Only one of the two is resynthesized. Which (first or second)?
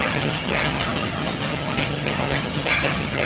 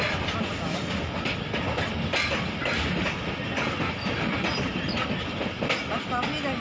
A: first